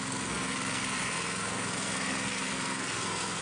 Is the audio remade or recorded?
remade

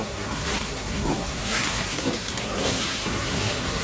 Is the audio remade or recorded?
remade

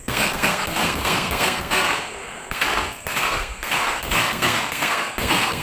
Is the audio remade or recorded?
remade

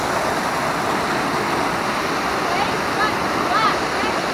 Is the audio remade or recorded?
recorded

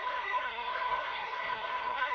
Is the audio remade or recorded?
remade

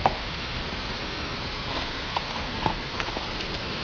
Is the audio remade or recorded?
remade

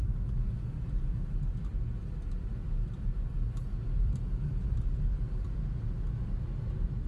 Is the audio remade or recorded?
recorded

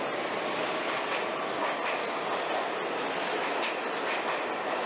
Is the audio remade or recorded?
recorded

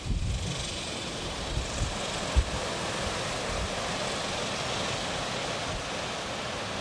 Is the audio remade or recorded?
recorded